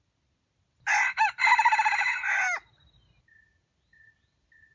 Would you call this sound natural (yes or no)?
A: yes